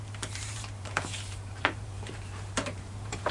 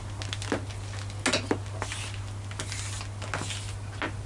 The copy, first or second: first